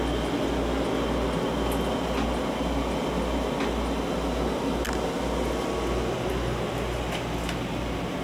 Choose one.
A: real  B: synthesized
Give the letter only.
A